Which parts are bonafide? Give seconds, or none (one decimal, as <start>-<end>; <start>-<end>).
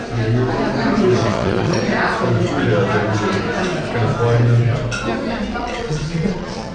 0.0-1.2; 1.8-5.5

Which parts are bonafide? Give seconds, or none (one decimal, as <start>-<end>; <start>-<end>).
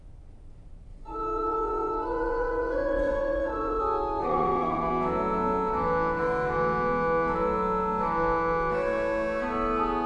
0.0-0.9; 3.8-4.2; 4.9-10.1